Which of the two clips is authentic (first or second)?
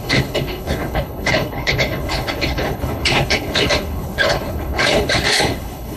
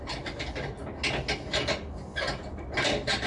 second